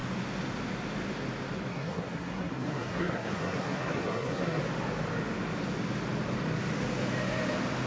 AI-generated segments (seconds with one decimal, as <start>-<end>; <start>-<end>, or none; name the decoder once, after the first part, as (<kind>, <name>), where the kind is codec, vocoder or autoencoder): 1.7-4.6 (codec, SNAC)